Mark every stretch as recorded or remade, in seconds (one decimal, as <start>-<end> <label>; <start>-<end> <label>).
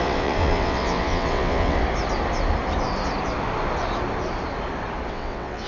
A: 0.0-1.8 remade; 1.8-5.1 recorded; 5.1-5.7 remade